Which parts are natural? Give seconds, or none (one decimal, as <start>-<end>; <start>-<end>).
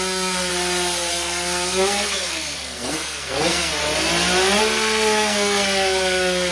0.5-1.1; 3.8-4.6